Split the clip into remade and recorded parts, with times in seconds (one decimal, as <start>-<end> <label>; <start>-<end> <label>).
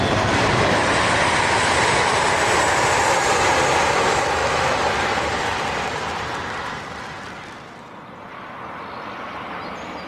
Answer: 0.0-4.4 recorded; 4.4-5.2 remade; 5.2-10.1 recorded